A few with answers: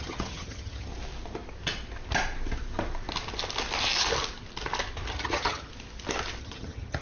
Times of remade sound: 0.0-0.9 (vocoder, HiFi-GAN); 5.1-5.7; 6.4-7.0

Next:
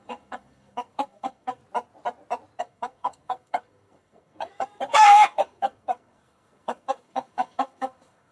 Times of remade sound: 0.0-1.6 (codec, SNAC); 2.6-8.3

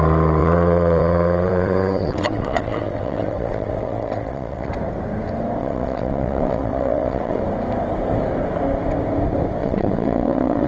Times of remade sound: 0.4-4.7 (vocoder, WaveNeXt); 5.6-7.4; 9.6-10.7

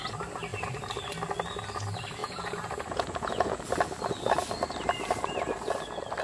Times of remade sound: 2.2-3.6 (vocoder, Vocos)

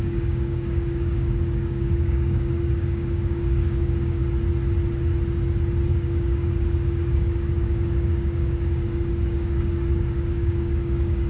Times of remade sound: 0.0-4.2 (codec, DAC); 5.9-11.3